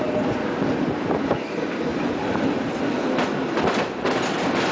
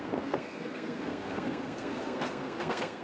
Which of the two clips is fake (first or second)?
second